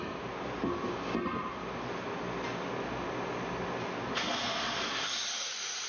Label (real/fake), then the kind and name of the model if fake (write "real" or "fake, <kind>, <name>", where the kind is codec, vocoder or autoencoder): real